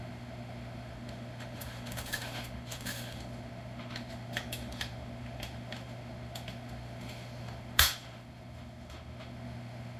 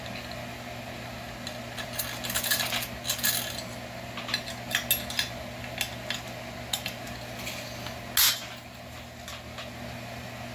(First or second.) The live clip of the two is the second